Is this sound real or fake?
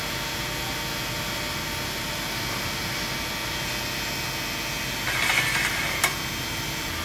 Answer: real